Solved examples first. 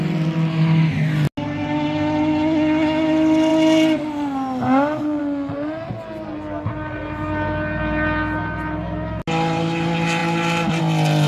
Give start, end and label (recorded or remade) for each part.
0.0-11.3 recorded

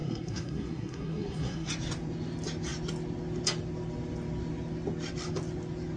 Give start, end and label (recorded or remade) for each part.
0.0-1.7 remade; 1.7-6.0 recorded

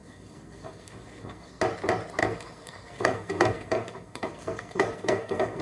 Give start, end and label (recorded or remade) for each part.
0.0-1.6 remade; 1.6-2.2 recorded; 2.2-5.6 remade

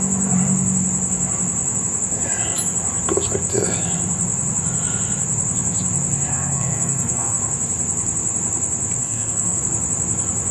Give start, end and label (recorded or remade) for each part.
0.0-6.3 recorded; 6.3-7.4 remade; 7.4-9.0 recorded; 9.0-9.6 remade; 9.6-10.5 recorded

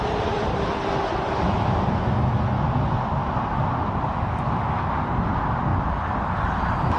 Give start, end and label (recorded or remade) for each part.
0.0-7.0 recorded

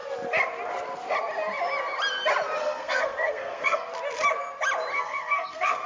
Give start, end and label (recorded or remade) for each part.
0.0-2.6 recorded; 2.6-3.9 remade; 3.9-4.9 recorded; 4.9-5.9 remade